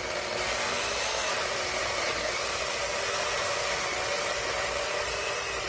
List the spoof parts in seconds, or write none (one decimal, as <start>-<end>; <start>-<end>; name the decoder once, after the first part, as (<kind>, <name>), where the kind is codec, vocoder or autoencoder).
none